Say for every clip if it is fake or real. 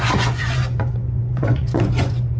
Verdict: fake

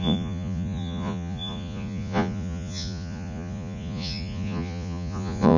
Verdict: fake